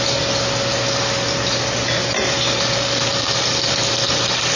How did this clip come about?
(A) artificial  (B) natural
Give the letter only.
B